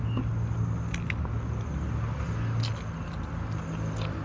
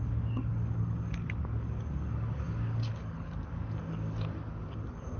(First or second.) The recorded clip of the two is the first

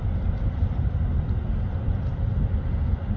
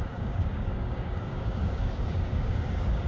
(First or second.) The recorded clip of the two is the first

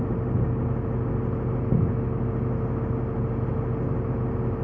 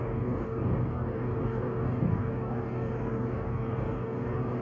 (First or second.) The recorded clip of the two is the first